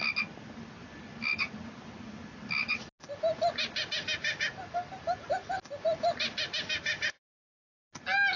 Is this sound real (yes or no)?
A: yes